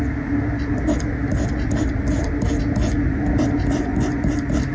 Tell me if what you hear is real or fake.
real